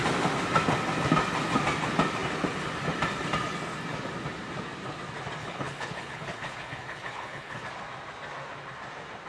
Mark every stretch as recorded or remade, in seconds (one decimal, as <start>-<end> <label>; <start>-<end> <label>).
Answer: 0.0-5.4 recorded; 5.4-7.7 remade; 7.7-9.3 recorded